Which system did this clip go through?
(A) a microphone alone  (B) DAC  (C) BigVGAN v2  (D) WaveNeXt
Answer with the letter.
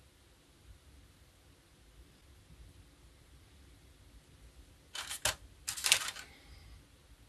A